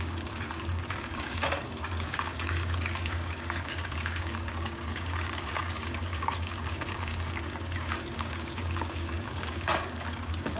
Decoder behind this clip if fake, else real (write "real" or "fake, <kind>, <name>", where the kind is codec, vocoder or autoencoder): fake, codec, DAC